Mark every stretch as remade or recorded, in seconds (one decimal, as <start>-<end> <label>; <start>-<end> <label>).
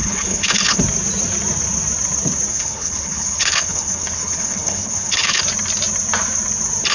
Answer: 0.0-0.8 remade; 0.8-2.5 recorded; 2.5-5.4 remade; 5.4-6.9 recorded